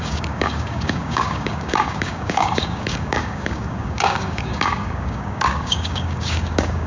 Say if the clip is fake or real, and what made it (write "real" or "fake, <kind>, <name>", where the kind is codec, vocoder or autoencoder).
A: fake, codec, DAC